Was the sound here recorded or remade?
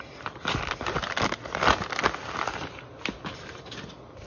recorded